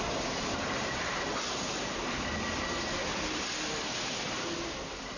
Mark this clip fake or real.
real